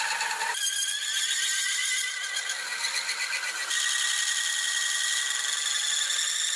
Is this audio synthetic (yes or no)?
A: no